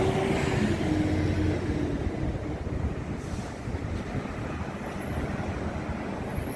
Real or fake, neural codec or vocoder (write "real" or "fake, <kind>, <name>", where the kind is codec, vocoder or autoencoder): real